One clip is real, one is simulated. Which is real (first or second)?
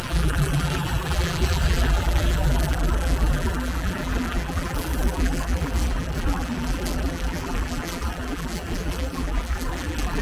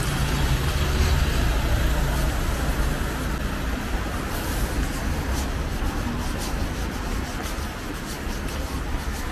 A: second